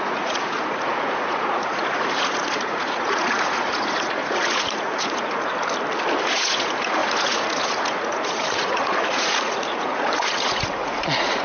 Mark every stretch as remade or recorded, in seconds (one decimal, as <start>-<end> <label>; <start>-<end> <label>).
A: 0.0-5.5 remade; 5.5-6.3 recorded; 6.3-11.4 remade